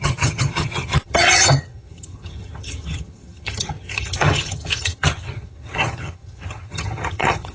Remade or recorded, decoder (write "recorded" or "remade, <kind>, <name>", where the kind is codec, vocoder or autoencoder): remade, vocoder, HiFi-GAN